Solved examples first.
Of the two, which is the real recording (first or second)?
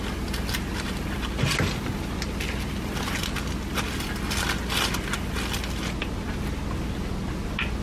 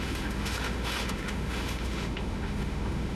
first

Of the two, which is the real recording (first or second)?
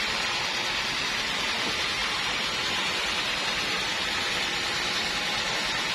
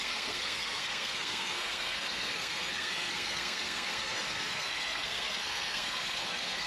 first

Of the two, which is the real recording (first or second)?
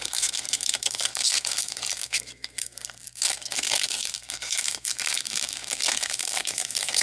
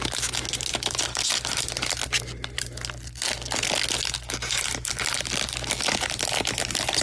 second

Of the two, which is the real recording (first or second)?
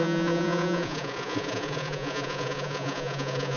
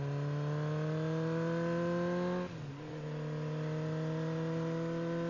second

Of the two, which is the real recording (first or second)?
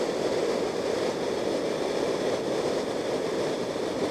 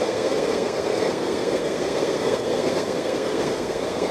first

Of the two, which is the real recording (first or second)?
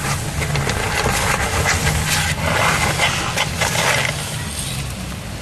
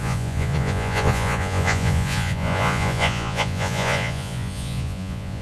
first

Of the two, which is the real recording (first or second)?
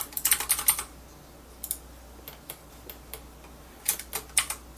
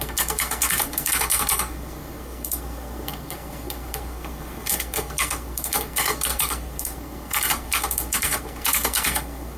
first